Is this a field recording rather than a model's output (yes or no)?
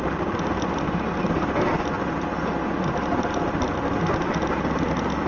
yes